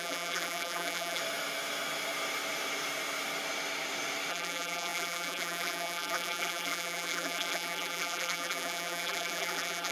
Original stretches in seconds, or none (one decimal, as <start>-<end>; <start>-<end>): 1.2-4.3